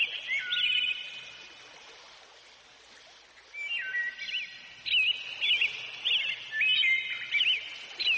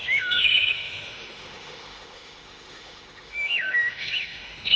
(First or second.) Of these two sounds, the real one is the first